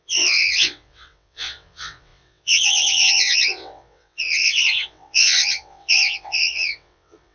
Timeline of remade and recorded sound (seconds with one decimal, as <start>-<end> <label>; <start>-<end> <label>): 0.0-7.3 remade

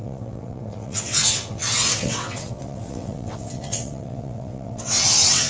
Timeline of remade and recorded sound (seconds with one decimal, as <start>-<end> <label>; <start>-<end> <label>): 0.0-5.5 remade

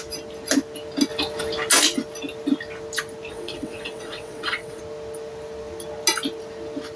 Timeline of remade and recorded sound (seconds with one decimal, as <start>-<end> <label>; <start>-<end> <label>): 0.0-3.3 recorded; 3.3-4.8 remade; 4.8-7.0 recorded

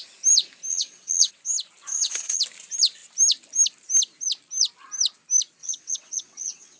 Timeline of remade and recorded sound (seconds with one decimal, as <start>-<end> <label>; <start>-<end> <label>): 0.0-0.7 recorded; 0.7-1.3 remade; 1.3-1.9 recorded; 1.9-2.4 remade; 2.4-5.6 recorded; 5.6-6.8 remade